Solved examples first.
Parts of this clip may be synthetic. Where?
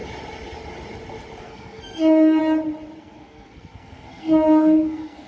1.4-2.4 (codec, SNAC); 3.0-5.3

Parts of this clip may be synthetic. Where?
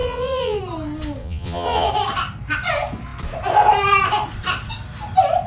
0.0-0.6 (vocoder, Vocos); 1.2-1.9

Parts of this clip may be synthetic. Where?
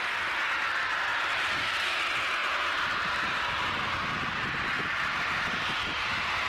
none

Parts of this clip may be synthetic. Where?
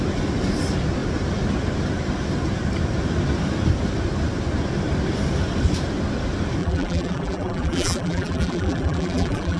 6.6-9.6 (vocoder, BigVGAN v2)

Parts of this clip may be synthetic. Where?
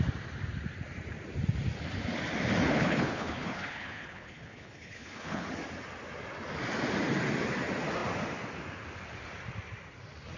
2.7-5.5 (codec, HILCodec)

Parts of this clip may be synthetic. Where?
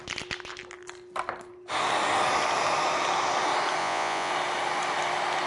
3.8-4.3 (vocoder, Vocos)